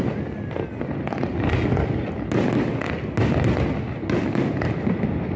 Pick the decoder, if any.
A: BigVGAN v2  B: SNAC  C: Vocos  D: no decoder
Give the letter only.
D